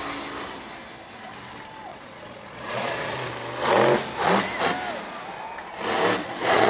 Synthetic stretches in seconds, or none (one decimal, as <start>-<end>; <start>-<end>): 1.9-3.3; 6.2-6.7